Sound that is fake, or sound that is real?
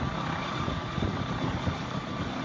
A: real